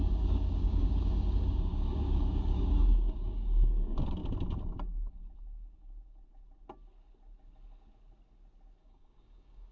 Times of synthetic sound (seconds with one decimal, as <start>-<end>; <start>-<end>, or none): 0.0-4.2; 8.8-9.7